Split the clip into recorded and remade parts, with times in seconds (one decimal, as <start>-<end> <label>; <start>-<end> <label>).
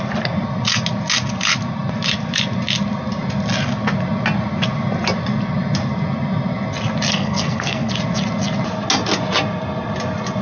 0.0-7.1 recorded; 7.1-7.9 remade; 7.9-10.4 recorded